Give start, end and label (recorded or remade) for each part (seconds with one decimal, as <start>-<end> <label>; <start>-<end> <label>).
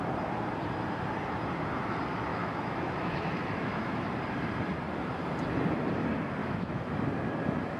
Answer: 0.0-2.3 recorded; 2.3-4.1 remade; 4.1-6.4 recorded; 6.4-6.9 remade; 6.9-7.8 recorded